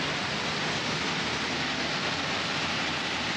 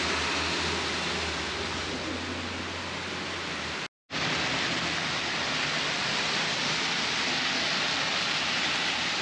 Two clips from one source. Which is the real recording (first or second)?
second